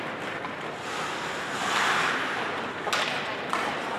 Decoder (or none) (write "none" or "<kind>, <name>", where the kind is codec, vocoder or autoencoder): none